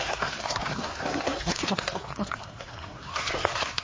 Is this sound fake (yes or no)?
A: yes